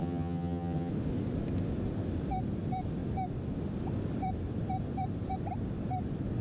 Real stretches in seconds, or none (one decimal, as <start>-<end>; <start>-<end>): 0.9-6.4